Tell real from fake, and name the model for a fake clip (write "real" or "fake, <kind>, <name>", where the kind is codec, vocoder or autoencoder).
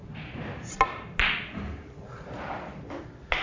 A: real